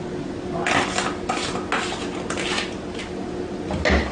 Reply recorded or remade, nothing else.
recorded